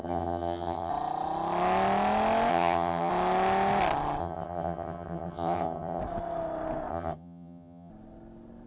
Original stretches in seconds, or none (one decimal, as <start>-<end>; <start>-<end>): 0.9-2.5; 3.1-4.2; 6.0-6.9; 7.9-8.7